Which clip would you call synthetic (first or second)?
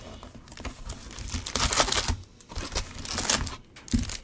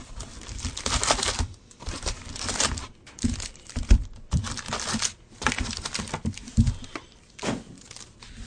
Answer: second